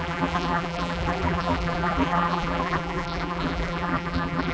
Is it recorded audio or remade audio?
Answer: remade